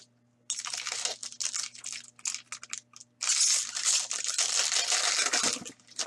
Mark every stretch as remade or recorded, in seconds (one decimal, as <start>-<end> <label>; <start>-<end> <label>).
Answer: 0.0-6.1 recorded